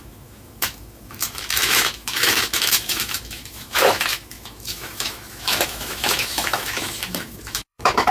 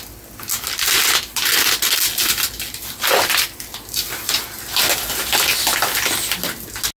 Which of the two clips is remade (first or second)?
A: first